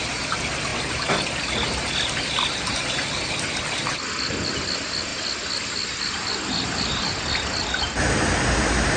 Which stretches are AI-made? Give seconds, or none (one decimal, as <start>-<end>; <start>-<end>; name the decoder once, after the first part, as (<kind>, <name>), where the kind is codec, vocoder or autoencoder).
none